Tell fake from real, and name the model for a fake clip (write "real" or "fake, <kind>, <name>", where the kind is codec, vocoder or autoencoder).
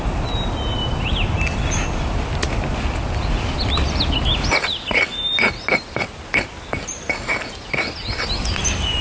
real